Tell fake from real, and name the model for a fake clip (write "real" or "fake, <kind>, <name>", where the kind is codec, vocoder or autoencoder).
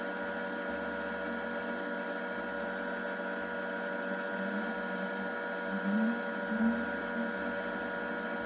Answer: real